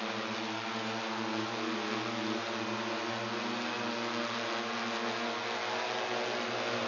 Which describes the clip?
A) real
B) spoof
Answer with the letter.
A